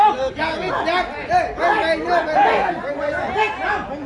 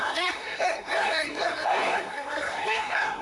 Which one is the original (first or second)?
first